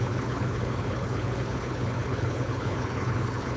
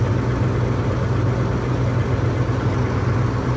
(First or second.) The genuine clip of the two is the second